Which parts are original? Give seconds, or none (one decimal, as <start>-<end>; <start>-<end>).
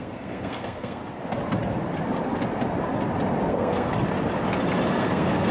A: 1.0-3.5; 3.9-5.0